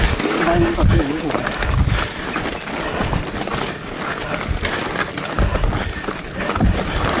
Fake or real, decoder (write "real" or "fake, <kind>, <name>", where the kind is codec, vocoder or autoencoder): real